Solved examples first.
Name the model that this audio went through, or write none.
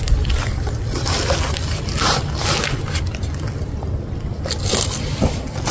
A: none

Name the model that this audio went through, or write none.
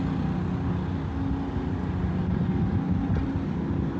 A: none